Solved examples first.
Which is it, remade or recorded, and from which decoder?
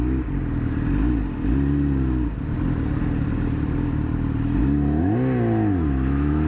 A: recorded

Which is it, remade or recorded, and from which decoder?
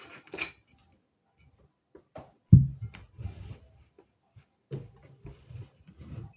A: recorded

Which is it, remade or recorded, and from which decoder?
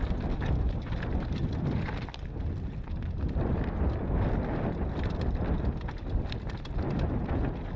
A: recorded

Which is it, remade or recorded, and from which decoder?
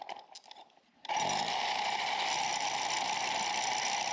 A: recorded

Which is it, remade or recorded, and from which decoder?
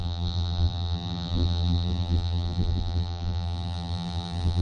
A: remade, vocoder, BigVGAN v2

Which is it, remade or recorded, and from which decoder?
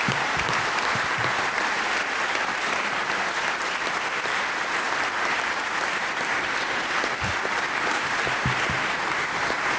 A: remade, vocoder, BigVGAN v2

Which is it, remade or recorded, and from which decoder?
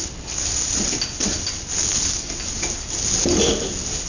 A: recorded